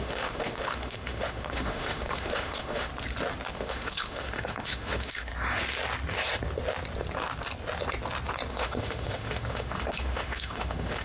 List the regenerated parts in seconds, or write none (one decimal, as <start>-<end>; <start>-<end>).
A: 0.0-2.9; 3.5-5.3; 8.5-11.0

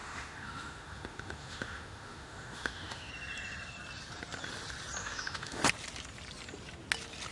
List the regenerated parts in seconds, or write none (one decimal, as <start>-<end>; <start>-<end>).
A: 0.0-3.1; 5.0-5.6

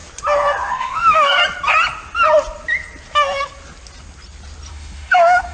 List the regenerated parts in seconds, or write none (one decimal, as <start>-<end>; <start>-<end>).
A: 0.7-1.4; 4.7-5.5

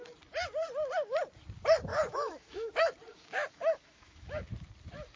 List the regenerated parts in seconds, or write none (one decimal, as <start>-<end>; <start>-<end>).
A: 1.9-2.7; 3.1-4.4

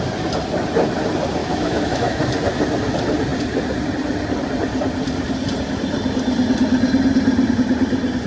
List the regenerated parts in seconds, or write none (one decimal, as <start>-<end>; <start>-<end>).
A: 1.4-2.2

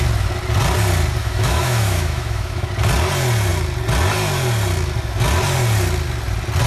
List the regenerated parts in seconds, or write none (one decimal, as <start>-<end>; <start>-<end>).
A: 1.2-2.7